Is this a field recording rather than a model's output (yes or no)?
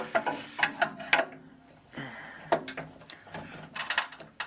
yes